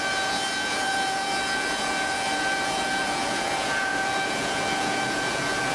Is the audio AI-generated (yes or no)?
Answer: yes